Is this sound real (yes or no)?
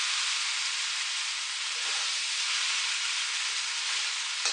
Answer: yes